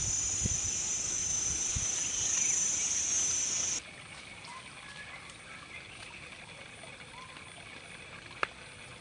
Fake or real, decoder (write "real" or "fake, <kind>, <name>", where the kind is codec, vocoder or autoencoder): real